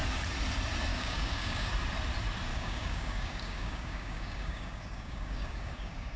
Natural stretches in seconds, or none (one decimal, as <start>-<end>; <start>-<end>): 0.0-0.9; 1.7-2.5